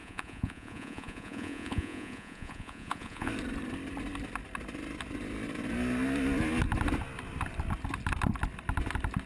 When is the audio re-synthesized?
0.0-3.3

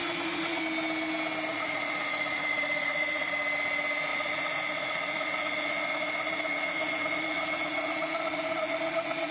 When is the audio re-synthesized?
0.0-0.6; 1.5-3.3; 4.1-9.3

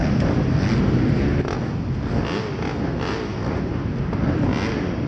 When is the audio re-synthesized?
none

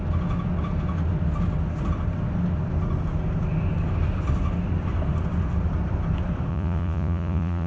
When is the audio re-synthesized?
6.5-7.7